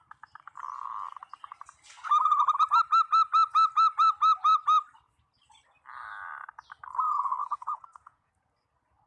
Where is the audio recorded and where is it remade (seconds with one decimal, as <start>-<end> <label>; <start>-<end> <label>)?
0.0-7.4 recorded; 7.4-8.3 remade; 8.3-9.1 recorded